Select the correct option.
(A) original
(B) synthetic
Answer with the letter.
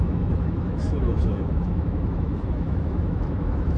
B